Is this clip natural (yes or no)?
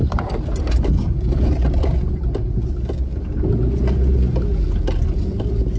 yes